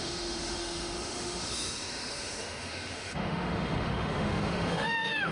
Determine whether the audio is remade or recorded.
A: remade